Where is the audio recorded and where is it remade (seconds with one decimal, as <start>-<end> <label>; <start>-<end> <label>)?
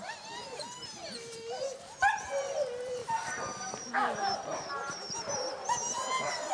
0.0-6.5 remade